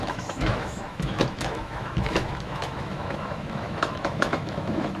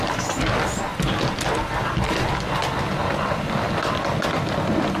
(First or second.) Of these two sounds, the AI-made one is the first